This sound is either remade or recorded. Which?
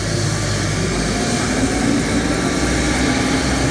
recorded